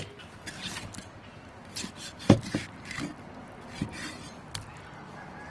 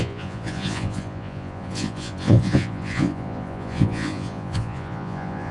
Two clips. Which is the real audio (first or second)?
first